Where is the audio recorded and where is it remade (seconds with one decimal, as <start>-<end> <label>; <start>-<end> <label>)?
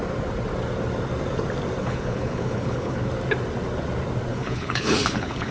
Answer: 0.0-1.8 recorded; 1.8-3.1 remade; 3.1-4.3 recorded; 4.3-5.5 remade